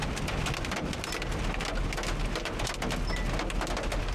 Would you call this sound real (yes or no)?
yes